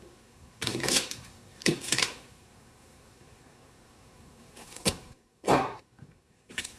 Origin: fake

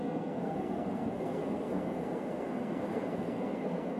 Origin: fake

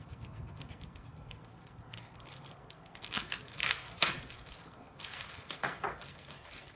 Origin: fake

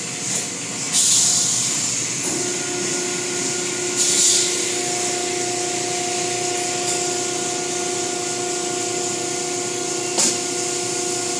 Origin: real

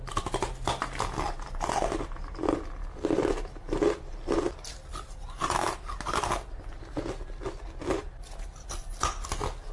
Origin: real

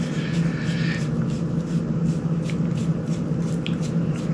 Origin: real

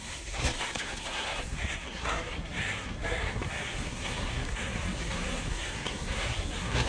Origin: fake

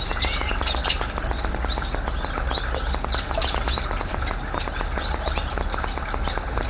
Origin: real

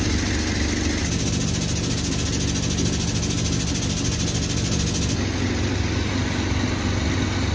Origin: real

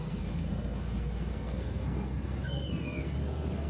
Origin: fake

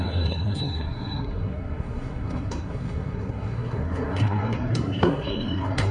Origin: fake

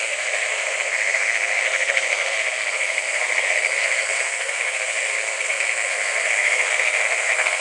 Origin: fake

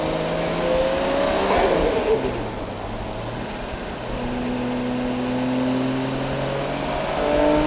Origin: real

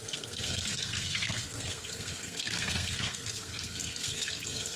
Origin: fake